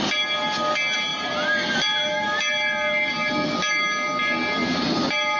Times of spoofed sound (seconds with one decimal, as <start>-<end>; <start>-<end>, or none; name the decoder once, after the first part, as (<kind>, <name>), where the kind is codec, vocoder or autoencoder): none